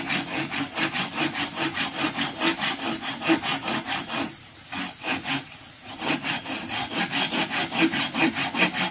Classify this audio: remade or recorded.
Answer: recorded